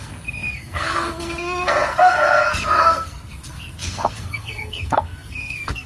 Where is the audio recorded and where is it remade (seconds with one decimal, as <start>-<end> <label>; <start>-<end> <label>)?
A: 0.0-5.9 remade